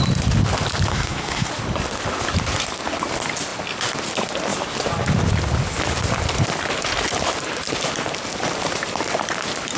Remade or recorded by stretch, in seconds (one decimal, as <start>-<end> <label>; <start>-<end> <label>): 0.0-0.9 recorded; 0.9-1.5 remade; 1.5-9.8 recorded